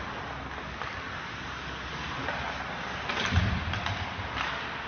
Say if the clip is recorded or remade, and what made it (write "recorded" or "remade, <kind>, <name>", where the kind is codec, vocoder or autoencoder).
recorded